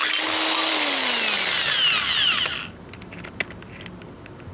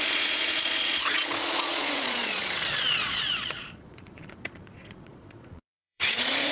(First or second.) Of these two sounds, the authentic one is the first